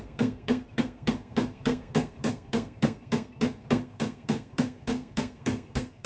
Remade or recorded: remade